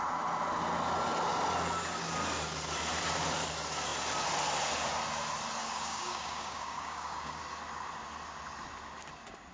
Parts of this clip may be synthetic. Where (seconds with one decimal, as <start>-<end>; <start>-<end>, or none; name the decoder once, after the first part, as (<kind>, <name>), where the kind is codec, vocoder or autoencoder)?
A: 5.6-7.4 (codec, DAC)